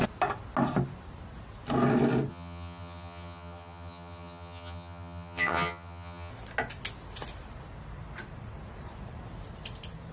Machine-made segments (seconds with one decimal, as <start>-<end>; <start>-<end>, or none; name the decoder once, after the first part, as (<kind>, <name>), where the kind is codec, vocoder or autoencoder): 2.3-6.3 (vocoder, HiFi-GAN)

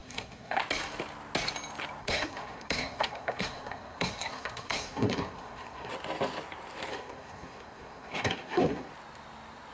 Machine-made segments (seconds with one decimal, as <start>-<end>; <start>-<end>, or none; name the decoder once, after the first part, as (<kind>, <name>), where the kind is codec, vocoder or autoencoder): 0.0-0.6 (codec, SNAC); 2.0-5.9; 6.9-8.9

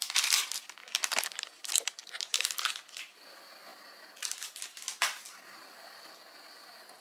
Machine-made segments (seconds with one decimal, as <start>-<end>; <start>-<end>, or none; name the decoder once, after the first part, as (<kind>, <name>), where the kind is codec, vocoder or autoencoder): none

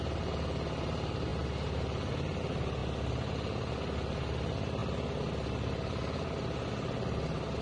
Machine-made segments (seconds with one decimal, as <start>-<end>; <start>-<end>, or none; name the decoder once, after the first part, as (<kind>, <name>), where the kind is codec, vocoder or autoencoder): none

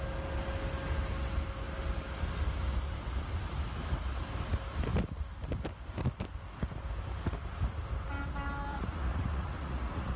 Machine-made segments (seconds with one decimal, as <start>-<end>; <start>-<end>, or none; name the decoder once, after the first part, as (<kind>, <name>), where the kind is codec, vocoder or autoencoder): 8.7-10.2 (vocoder, Vocos)